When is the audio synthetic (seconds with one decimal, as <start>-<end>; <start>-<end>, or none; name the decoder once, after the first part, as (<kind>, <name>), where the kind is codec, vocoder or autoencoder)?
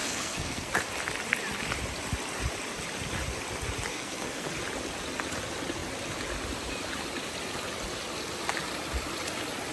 0.0-0.7 (codec, SNAC); 3.9-4.5